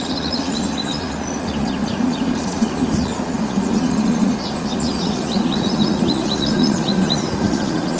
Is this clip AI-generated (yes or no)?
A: yes